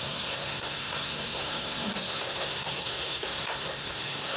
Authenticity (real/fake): fake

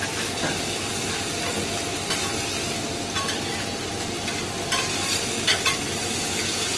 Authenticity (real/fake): real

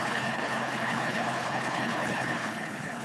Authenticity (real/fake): fake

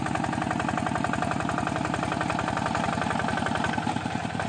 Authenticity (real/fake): real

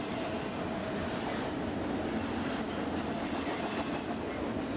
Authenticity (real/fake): real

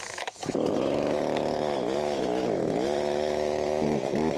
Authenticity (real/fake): fake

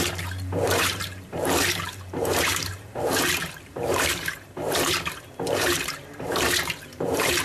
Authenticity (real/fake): fake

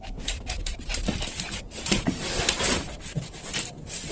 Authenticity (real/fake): fake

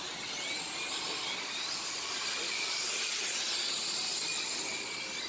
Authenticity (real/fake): real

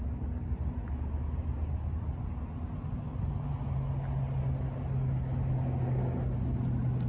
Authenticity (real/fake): real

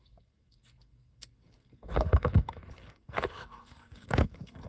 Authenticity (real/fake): fake